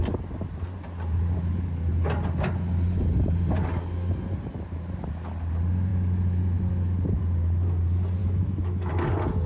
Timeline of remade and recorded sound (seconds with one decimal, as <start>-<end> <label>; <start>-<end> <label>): 0.0-8.2 recorded; 8.2-8.9 remade; 8.9-9.5 recorded